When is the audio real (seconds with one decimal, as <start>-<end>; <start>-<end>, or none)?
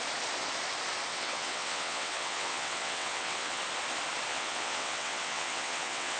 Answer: 0.0-1.1; 3.6-4.3